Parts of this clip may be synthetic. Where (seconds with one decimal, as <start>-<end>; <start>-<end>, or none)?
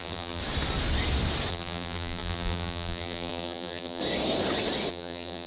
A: 0.0-0.4; 1.5-4.0; 4.9-5.5